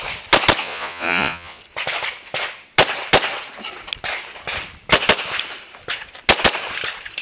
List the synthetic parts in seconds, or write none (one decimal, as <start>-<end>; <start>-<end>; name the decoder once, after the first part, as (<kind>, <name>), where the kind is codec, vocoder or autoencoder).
0.6-1.6 (vocoder, Vocos)